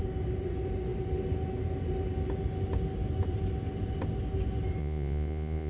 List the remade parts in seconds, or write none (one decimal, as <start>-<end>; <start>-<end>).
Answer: 4.8-5.7